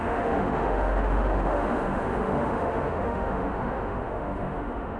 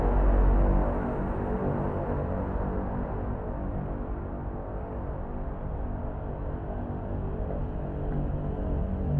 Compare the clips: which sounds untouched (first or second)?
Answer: second